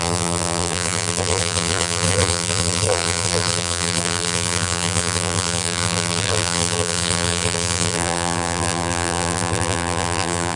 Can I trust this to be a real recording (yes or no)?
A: no